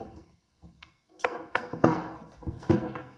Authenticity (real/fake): fake